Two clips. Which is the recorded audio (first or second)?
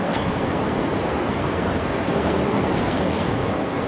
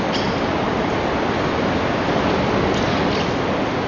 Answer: second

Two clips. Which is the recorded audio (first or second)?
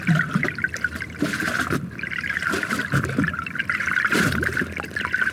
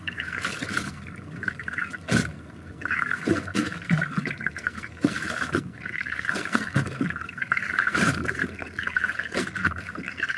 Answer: first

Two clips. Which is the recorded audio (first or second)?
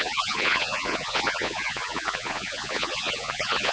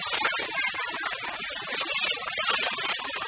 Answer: second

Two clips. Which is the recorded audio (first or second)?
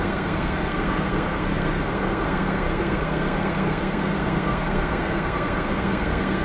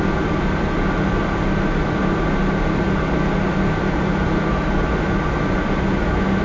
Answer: second